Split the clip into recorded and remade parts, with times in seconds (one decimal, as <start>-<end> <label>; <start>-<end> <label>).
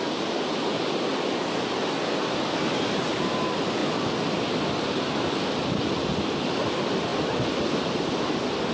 0.0-8.7 recorded